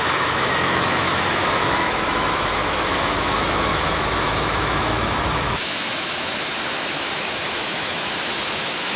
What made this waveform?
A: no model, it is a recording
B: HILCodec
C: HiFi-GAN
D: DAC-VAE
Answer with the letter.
D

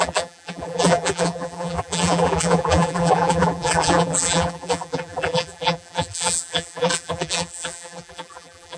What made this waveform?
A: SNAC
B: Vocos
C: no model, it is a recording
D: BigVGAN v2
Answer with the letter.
D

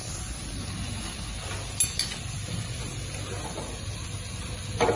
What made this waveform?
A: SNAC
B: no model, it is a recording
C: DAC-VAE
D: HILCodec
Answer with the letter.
B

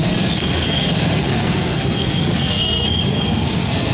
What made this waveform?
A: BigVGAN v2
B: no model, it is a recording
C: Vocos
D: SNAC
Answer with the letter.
D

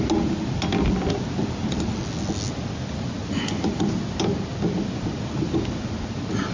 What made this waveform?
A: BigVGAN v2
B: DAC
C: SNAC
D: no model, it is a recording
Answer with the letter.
D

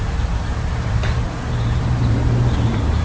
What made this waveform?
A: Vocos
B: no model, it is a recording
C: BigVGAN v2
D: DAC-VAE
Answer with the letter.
C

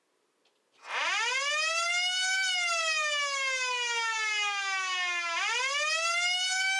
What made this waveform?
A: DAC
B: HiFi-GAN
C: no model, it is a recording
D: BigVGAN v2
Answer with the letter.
C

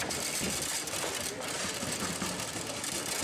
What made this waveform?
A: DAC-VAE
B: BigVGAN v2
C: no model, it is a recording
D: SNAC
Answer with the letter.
C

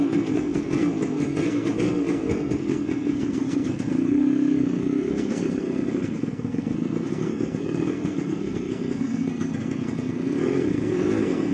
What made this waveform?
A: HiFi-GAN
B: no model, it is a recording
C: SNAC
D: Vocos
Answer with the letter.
C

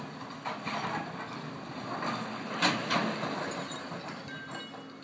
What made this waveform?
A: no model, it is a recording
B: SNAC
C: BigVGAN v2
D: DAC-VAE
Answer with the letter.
A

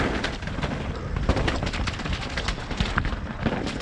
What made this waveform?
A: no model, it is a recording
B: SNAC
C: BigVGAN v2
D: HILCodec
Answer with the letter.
A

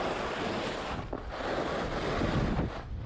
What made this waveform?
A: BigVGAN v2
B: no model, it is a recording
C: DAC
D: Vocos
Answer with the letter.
B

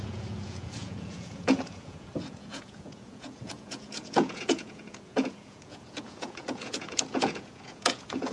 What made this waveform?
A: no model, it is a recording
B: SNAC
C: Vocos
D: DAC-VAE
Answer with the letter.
C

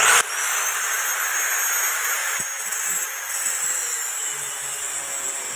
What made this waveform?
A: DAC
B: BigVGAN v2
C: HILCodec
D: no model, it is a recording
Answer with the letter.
D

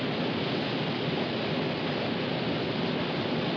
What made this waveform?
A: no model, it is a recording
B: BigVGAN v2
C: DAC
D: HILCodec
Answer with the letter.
A